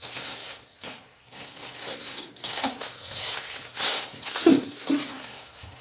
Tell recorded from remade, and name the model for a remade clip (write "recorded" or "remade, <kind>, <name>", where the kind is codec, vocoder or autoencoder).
remade, codec, SNAC